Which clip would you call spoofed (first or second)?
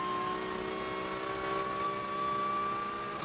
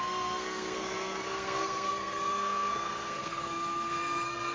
second